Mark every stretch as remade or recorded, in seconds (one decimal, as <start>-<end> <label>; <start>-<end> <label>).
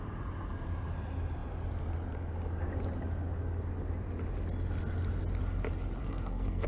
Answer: 0.0-6.0 recorded; 6.0-6.7 remade